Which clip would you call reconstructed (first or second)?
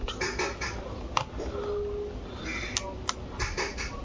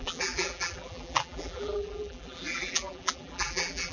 second